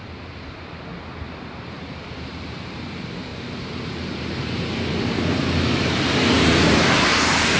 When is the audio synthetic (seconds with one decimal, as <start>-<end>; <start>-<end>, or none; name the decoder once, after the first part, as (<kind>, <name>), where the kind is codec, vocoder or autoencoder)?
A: 0.0-0.9 (vocoder, BigVGAN v2); 1.5-3.3; 3.9-7.6